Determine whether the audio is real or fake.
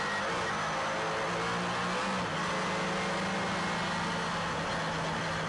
real